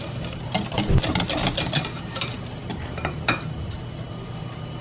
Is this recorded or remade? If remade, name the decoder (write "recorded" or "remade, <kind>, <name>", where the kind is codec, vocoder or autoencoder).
recorded